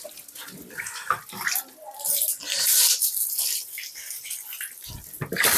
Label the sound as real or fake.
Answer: real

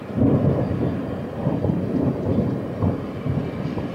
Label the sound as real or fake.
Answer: real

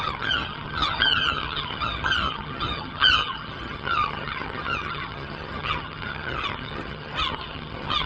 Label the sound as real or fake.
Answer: fake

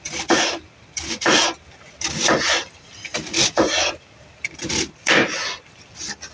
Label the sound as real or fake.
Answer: real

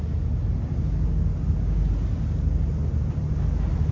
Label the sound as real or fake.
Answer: real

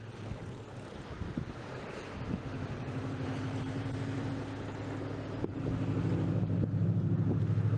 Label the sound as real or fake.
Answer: real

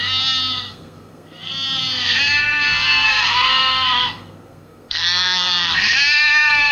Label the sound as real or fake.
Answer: fake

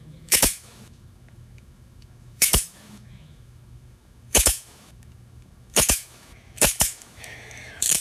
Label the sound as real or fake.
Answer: fake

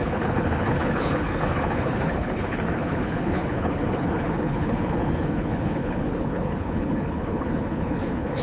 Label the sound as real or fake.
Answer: fake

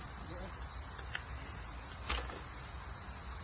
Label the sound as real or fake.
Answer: real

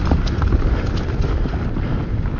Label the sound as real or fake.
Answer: real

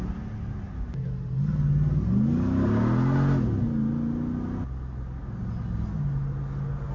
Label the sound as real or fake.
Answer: real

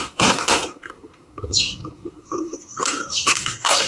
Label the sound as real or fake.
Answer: fake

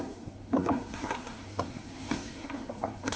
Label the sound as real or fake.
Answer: fake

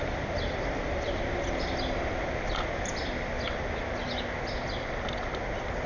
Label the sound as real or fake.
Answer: real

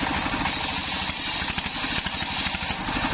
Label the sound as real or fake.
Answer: real